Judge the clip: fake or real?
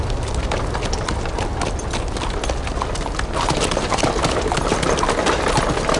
real